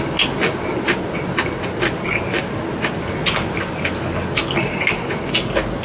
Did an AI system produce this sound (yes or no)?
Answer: no